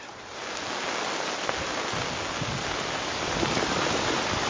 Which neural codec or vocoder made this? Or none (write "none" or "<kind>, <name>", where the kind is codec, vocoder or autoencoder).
none